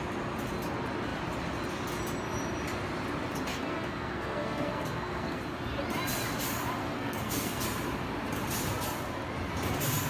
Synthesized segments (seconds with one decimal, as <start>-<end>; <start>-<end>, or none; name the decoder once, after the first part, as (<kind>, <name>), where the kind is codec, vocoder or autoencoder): 3.5-5.4 (codec, SNAC); 6.8-7.6